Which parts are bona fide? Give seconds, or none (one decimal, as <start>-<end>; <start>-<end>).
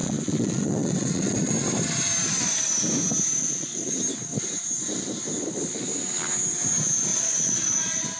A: 1.5-3.4; 3.9-7.1